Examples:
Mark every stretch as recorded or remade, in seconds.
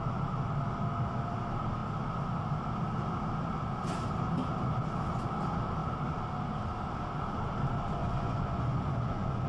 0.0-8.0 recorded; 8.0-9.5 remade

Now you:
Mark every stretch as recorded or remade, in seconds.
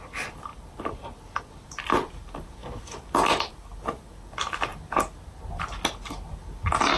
0.0-7.0 recorded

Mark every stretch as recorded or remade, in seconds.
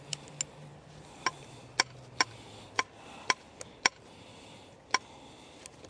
0.0-5.9 recorded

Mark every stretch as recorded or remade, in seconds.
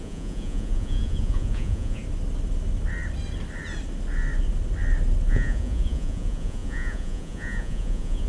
0.0-2.0 remade; 2.0-5.3 recorded; 5.3-8.3 remade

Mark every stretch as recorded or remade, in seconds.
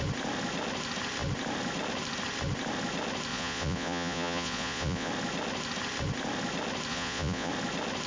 0.0-3.3 recorded; 3.3-5.1 remade; 5.1-6.9 recorded; 6.9-7.5 remade; 7.5-8.1 recorded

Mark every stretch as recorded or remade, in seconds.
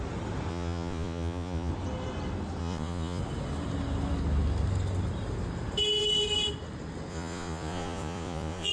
0.0-0.5 recorded; 0.5-1.7 remade; 1.7-2.6 recorded; 2.6-3.2 remade; 3.2-7.1 recorded; 7.1-8.7 remade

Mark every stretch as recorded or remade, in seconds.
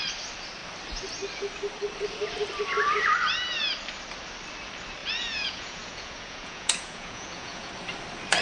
0.0-5.0 recorded; 5.0-7.7 remade; 7.7-8.4 recorded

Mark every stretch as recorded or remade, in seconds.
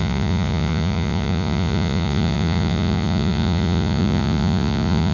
0.0-5.1 remade